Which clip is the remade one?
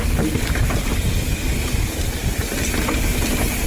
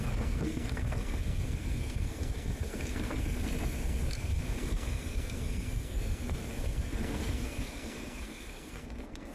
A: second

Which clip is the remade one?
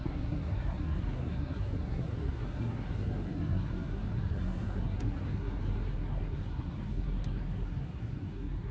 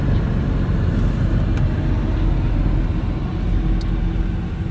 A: first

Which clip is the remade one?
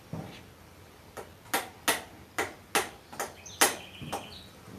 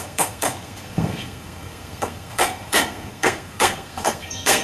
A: second